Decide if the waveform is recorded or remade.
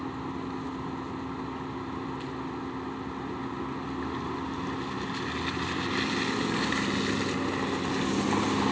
recorded